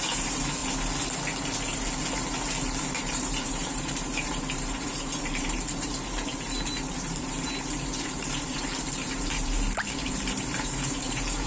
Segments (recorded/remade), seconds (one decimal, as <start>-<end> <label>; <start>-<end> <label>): 0.0-0.6 remade; 0.6-2.8 recorded; 2.8-11.5 remade